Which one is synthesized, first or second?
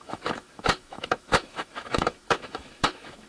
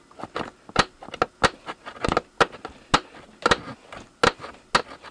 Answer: first